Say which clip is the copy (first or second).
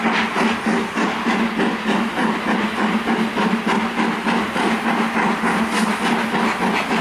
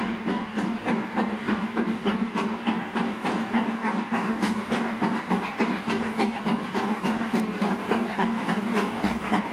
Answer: second